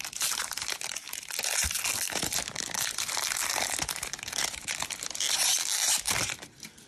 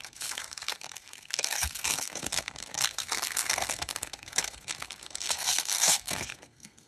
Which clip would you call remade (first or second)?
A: second